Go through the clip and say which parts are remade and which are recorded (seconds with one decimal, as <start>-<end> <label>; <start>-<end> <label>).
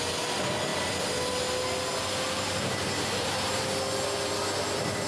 0.0-5.1 recorded